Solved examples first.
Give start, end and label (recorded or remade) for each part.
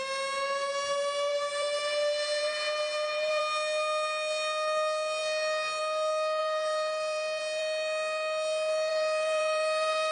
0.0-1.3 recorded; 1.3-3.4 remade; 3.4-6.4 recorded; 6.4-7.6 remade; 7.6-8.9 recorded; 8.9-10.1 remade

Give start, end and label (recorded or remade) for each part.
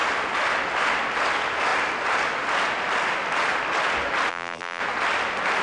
0.0-4.3 recorded; 4.3-4.8 remade; 4.8-5.6 recorded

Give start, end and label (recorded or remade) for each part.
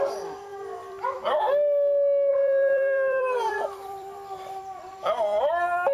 0.0-0.5 recorded; 0.5-1.4 remade; 1.4-2.3 recorded; 2.3-5.4 remade; 5.4-5.9 recorded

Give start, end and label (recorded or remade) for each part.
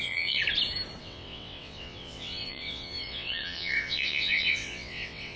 0.0-0.4 remade; 0.4-1.0 recorded; 1.0-5.4 remade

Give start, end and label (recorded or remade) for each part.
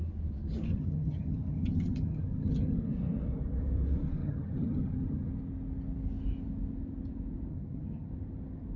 0.0-0.7 recorded; 0.7-2.8 remade; 2.8-4.2 recorded; 4.2-5.3 remade; 5.3-7.5 recorded; 7.5-8.1 remade; 8.1-8.8 recorded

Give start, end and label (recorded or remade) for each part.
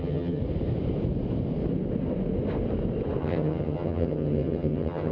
0.0-0.4 remade; 0.4-3.2 recorded; 3.2-5.1 remade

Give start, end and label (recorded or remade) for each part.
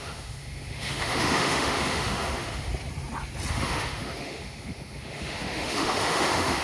0.0-2.7 remade; 2.7-3.5 recorded; 3.5-6.6 remade